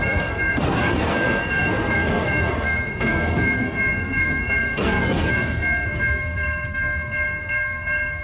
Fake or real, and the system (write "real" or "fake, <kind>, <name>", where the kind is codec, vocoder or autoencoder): fake, codec, SNAC